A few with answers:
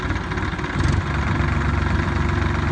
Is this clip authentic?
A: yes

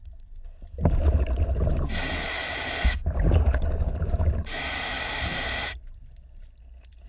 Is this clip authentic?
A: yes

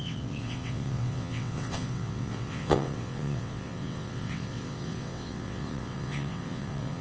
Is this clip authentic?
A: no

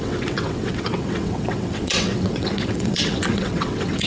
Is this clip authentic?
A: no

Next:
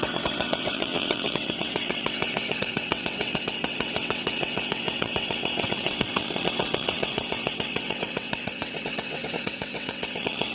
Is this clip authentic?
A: no